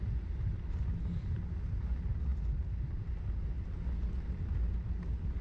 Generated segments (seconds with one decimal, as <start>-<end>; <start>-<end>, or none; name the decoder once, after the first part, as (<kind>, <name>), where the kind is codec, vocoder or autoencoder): none